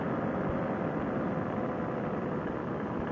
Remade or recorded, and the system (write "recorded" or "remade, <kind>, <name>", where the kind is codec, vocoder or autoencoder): recorded